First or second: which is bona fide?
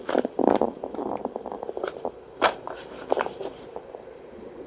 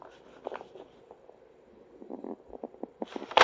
second